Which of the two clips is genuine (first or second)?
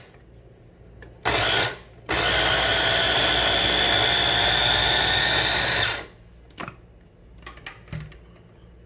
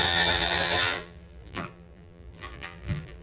first